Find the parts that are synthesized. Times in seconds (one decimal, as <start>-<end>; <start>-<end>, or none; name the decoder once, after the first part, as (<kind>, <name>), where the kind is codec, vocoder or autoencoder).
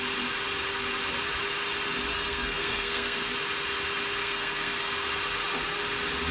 2.1-3.2 (codec, SNAC); 4.2-4.9